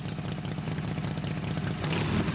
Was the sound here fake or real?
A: real